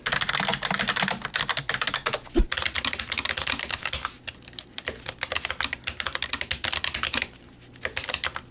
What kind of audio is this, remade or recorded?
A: recorded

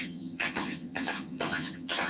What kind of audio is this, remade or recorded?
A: remade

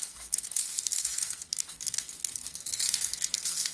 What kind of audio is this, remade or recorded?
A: remade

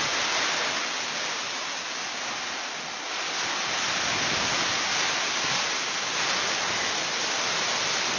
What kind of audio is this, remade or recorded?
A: recorded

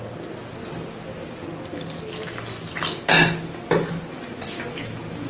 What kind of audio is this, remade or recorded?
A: recorded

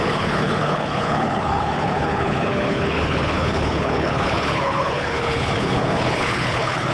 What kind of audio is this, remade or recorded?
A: remade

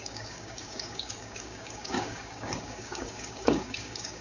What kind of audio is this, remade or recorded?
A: remade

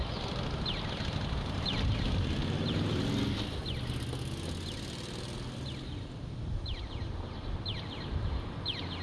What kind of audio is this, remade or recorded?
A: recorded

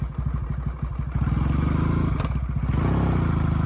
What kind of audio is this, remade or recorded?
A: recorded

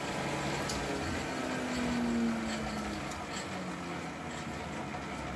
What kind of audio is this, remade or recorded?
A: recorded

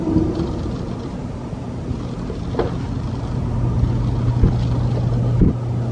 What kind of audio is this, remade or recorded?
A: recorded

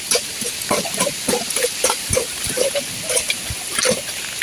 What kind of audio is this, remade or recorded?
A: recorded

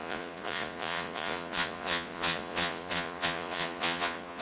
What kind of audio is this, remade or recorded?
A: remade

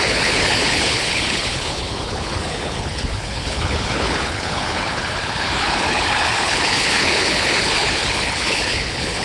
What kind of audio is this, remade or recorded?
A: remade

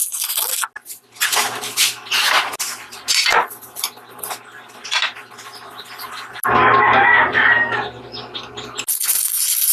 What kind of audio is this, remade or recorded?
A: recorded